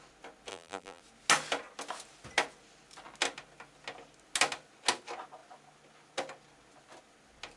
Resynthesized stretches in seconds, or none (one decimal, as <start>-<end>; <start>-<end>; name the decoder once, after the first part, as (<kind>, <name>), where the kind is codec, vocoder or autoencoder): 0.5-1.0 (vocoder, BigVGAN v2)